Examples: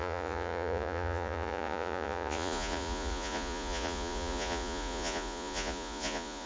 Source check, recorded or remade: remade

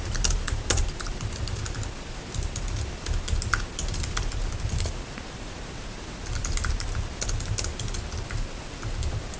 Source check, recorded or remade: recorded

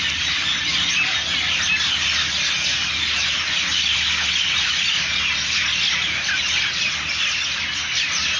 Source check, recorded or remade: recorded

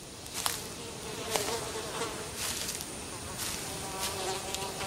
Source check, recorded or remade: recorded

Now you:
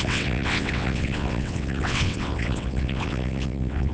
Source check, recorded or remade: remade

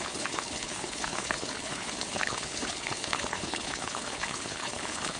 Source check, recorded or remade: remade